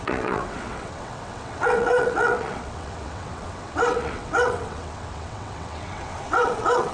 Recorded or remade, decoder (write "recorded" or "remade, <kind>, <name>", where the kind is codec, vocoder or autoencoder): remade, vocoder, WaveNeXt